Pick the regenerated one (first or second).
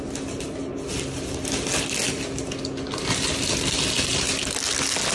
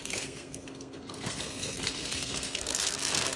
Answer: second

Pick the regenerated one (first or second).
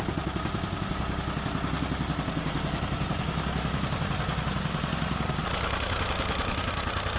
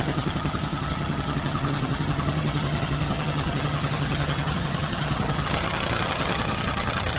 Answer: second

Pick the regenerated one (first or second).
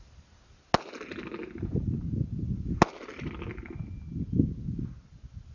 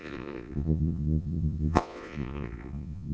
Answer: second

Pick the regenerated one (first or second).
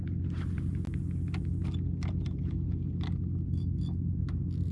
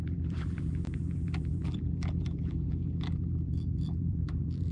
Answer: second